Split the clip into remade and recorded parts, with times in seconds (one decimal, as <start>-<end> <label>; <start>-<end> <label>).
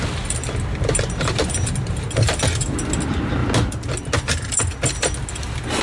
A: 0.0-5.8 recorded